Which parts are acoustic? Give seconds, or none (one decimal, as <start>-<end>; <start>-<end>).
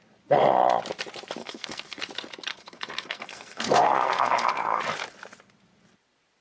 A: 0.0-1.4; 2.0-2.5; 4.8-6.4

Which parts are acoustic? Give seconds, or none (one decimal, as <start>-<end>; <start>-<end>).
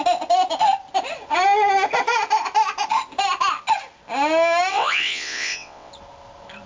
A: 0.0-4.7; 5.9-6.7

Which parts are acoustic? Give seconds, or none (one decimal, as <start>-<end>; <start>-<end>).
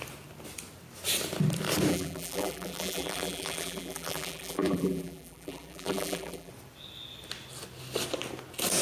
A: 0.0-1.9; 6.5-8.8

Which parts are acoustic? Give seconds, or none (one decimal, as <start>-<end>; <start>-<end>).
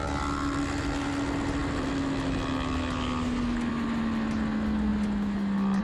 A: 0.0-5.8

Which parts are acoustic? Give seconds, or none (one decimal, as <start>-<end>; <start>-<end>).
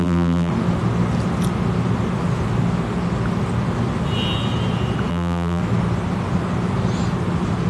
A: 0.5-5.1; 5.6-7.7